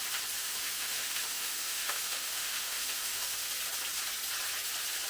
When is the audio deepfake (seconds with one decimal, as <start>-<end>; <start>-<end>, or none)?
0.4-3.5